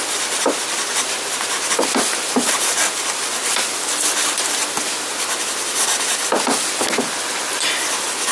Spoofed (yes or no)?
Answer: no